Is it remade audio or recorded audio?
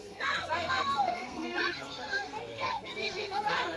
remade